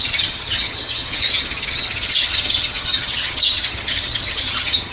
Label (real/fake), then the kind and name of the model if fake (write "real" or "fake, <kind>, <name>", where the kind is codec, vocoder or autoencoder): fake, vocoder, HiFi-GAN